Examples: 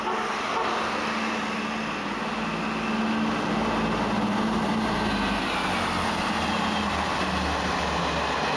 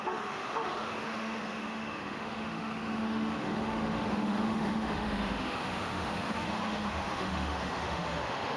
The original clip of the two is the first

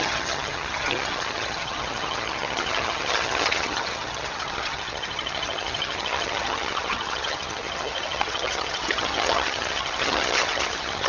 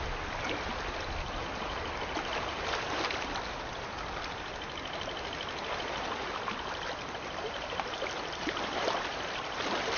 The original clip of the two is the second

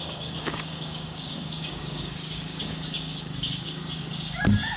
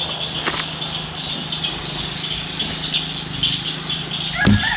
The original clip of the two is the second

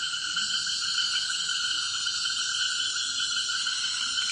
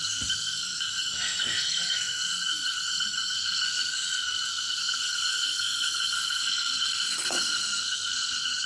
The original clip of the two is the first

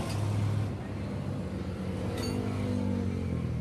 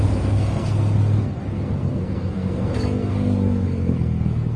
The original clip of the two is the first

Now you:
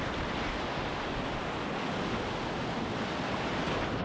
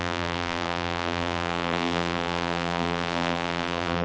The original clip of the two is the first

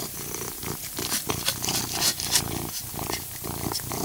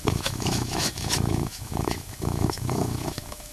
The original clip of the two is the first